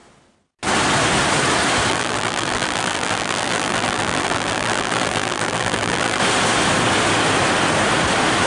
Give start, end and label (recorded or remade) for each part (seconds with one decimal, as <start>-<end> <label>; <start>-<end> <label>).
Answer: 0.0-1.9 recorded; 1.9-6.2 remade; 6.2-8.5 recorded

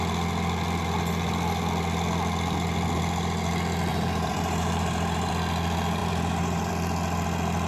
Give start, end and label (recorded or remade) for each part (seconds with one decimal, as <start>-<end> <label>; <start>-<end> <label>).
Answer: 0.0-3.9 recorded; 3.9-5.3 remade; 5.3-6.0 recorded; 6.0-6.7 remade; 6.7-7.7 recorded

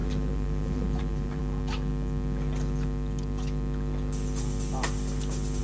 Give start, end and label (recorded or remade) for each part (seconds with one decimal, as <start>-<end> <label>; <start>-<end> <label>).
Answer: 0.0-1.4 remade; 1.4-5.6 recorded

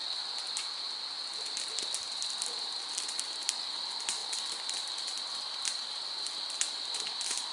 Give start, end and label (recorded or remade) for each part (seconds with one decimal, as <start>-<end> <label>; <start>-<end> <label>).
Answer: 0.0-4.2 recorded; 4.2-7.5 remade

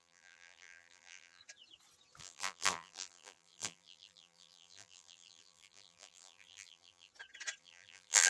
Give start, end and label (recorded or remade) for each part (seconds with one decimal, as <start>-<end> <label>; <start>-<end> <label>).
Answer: 0.0-1.4 remade; 1.4-2.2 recorded; 2.2-7.1 remade; 7.1-7.6 recorded; 7.6-8.3 remade